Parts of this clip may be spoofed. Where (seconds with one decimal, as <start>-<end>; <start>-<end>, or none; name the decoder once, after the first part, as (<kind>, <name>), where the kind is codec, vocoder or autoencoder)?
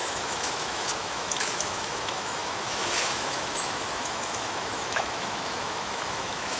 0.0-6.6 (autoencoder, DAC-VAE)